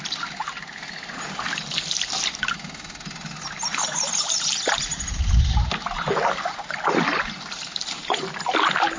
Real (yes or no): yes